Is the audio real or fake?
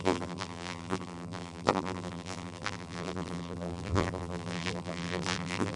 fake